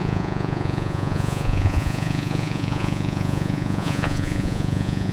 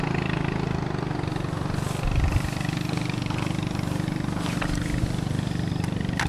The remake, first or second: first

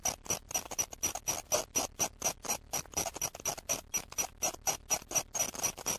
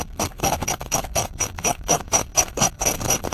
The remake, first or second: second